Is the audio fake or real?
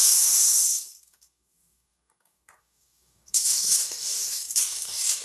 fake